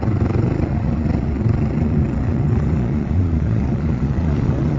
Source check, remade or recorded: remade